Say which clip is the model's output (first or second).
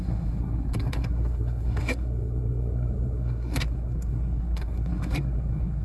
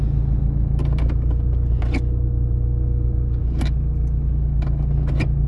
first